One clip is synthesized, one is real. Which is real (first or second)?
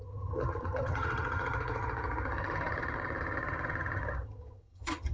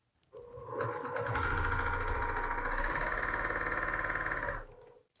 second